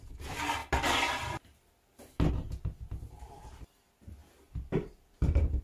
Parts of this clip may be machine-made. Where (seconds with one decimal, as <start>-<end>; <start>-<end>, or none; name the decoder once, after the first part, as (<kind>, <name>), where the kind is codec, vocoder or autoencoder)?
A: 4.2-5.6 (vocoder, BigVGAN v2)